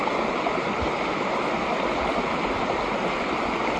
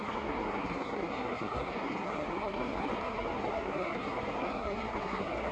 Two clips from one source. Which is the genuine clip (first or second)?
first